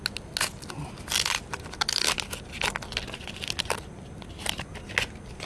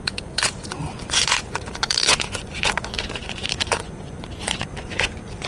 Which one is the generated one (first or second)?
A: second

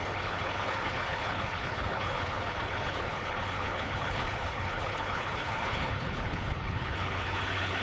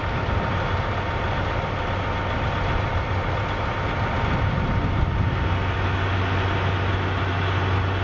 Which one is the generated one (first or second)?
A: first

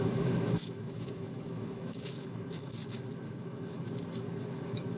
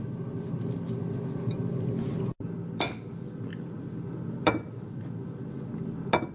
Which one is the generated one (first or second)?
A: first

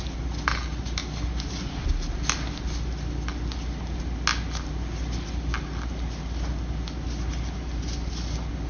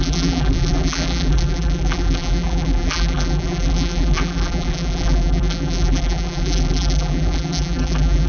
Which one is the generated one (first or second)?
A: second